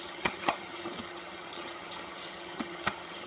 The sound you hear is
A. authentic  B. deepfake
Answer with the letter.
B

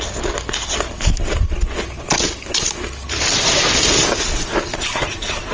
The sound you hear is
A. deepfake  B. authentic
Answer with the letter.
B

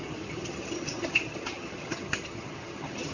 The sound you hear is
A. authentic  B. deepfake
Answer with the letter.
B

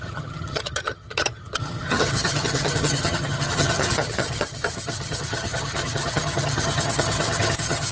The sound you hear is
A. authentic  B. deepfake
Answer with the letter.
B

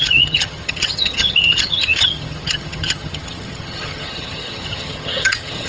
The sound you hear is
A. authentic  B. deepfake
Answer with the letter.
B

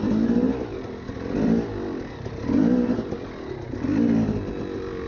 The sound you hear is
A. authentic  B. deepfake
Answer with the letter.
A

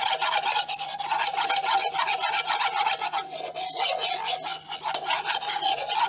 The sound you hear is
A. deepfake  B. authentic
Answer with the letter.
B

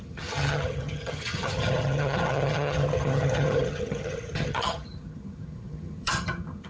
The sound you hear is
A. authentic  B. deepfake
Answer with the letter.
B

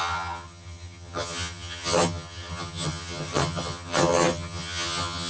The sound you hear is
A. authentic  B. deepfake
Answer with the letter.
B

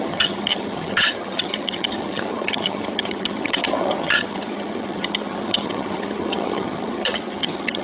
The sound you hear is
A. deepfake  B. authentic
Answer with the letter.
A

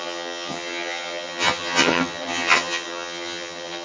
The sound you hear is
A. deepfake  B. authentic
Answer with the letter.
A